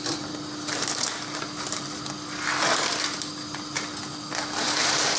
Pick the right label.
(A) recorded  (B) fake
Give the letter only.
A